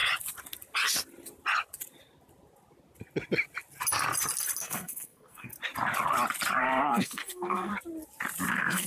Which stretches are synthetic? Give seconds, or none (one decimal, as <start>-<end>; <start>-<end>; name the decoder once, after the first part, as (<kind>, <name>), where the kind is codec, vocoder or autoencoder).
4.6-5.5 (codec, SNAC); 6.6-7.7; 8.5-8.9